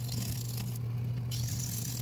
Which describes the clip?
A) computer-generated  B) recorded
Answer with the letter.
B